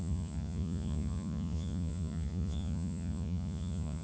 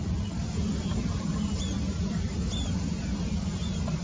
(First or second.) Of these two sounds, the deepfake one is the first